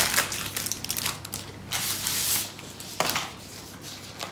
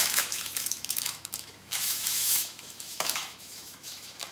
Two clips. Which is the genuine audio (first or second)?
first